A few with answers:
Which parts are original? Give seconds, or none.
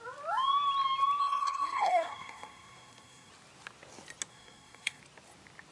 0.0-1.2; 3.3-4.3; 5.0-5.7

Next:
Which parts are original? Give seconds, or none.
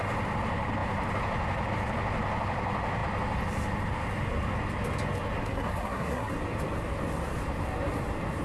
0.0-5.4; 6.3-8.4